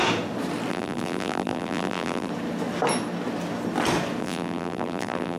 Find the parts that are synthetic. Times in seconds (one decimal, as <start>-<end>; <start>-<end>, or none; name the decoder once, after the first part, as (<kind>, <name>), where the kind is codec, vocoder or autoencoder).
0.7-2.3 (vocoder, BigVGAN v2); 4.2-5.4